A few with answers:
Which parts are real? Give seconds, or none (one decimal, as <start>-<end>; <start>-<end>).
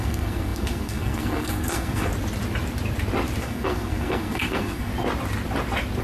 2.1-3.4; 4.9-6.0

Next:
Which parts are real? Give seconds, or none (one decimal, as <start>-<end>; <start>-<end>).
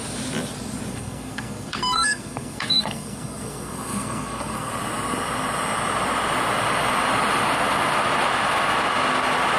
0.0-0.9; 4.7-9.6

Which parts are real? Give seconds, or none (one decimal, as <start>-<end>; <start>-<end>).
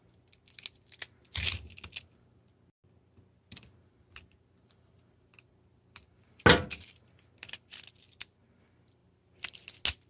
0.0-10.1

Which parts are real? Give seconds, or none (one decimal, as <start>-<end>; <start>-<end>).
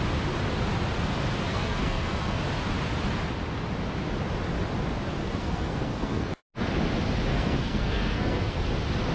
0.0-1.5; 2.4-5.2; 6.3-7.3; 8.6-9.1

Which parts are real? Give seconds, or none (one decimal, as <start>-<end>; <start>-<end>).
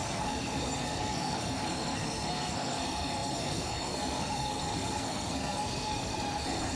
none